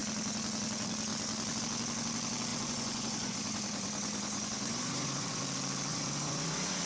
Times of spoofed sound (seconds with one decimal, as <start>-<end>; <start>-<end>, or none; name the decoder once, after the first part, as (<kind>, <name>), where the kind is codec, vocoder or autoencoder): 2.5-5.4 (vocoder, Vocos); 5.9-6.8